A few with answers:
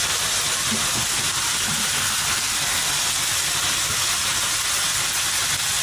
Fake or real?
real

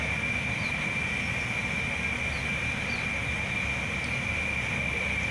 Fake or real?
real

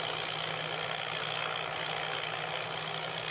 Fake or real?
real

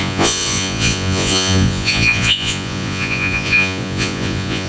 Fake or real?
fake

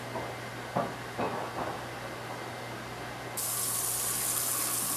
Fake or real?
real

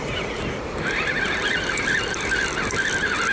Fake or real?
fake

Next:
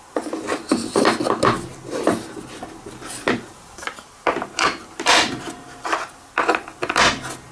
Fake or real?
real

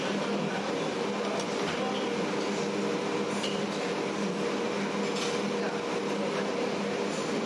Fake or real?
real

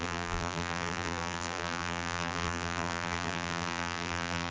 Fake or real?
fake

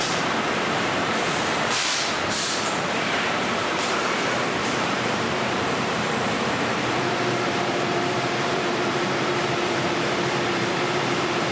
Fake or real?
fake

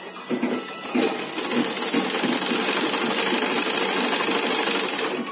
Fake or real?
real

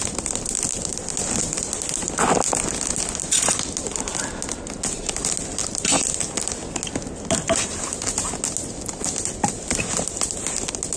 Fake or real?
real